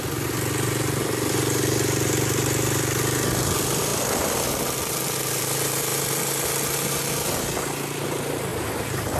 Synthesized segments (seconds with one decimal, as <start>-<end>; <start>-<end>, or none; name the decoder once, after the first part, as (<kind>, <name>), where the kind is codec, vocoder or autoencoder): 8.5-9.2 (vocoder, BigVGAN v2)